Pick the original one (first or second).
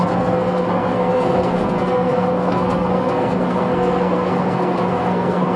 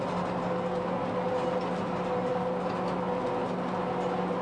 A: second